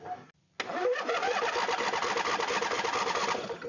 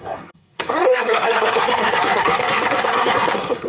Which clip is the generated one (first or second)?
second